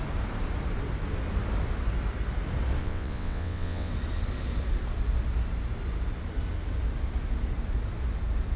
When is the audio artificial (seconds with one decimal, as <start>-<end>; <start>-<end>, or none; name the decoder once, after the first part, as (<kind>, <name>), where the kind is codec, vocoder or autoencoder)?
2.8-3.9 (vocoder, WaveNeXt)